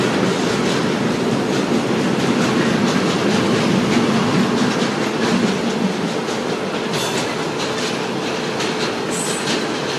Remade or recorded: recorded